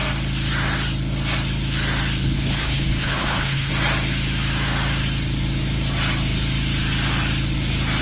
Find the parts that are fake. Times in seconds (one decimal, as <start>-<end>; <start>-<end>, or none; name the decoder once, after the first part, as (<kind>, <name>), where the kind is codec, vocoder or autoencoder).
2.2-3.7 (codec, HILCodec)